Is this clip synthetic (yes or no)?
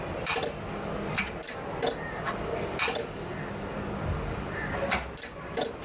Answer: no